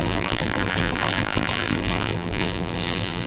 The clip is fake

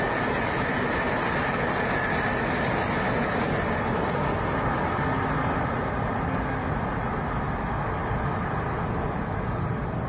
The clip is real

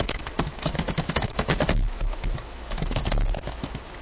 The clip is fake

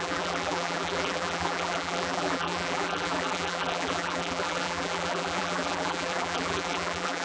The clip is fake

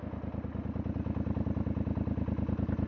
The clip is real